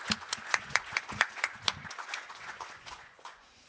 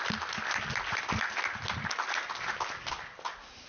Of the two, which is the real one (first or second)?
second